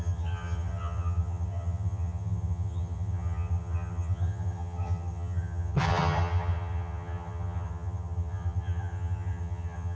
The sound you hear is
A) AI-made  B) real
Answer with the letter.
A